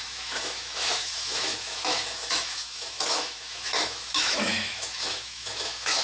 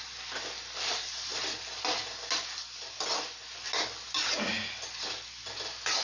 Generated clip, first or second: first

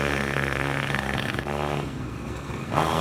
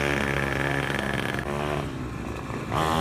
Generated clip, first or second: first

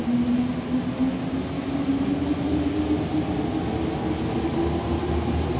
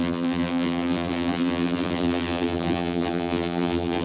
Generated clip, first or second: second